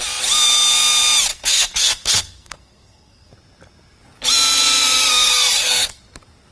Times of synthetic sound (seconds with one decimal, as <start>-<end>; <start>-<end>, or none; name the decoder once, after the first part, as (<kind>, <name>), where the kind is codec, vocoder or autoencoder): 1.3-3.3 (codec, SNAC); 5.1-6.0